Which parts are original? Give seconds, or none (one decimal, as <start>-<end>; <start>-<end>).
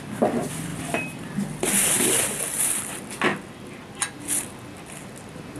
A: 0.0-5.6